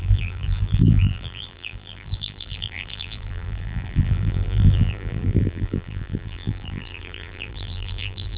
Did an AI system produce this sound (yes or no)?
yes